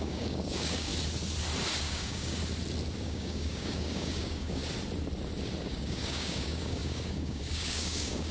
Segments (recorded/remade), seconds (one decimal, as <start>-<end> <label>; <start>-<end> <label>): 0.0-0.9 remade; 0.9-1.8 recorded; 1.8-2.4 remade; 2.4-3.0 recorded; 3.0-4.6 remade; 4.6-5.6 recorded; 5.6-8.3 remade